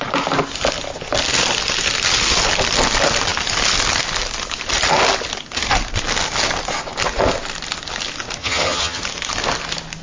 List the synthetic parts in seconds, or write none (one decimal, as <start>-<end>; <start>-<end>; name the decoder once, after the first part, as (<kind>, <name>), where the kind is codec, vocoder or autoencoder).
8.4-9.0 (vocoder, HiFi-GAN)